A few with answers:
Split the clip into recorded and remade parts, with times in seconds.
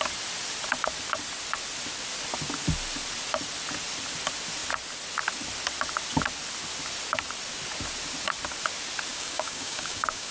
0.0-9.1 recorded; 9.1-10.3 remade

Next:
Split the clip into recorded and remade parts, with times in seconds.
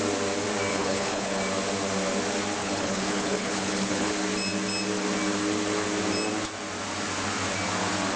0.0-0.7 recorded; 0.7-1.4 remade; 1.4-2.6 recorded; 2.6-4.1 remade; 4.1-8.2 recorded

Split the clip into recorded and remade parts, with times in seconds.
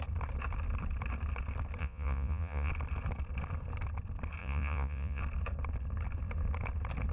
0.0-1.8 recorded; 1.8-2.7 remade; 2.7-4.4 recorded; 4.4-5.2 remade; 5.2-7.1 recorded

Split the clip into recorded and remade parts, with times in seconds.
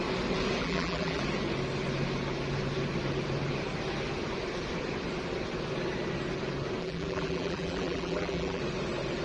0.0-0.6 recorded; 0.6-1.2 remade; 1.2-6.8 recorded; 6.8-8.6 remade; 8.6-9.2 recorded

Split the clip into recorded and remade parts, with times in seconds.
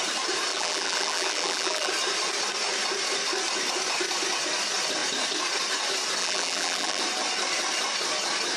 0.0-0.5 recorded; 0.5-1.9 remade; 1.9-6.2 recorded; 6.2-7.0 remade; 7.0-8.6 recorded